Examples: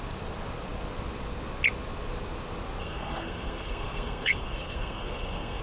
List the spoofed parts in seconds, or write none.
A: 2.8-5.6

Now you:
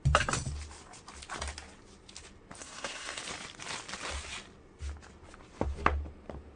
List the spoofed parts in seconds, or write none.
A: 2.6-3.2